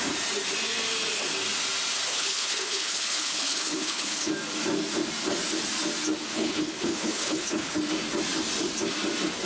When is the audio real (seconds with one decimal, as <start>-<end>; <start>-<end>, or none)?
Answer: 0.0-2.1; 4.3-6.3; 7.8-9.5